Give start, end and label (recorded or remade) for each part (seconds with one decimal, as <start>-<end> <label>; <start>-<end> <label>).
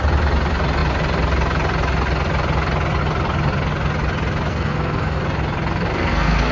0.0-4.5 recorded; 4.5-5.2 remade; 5.2-5.9 recorded; 5.9-6.5 remade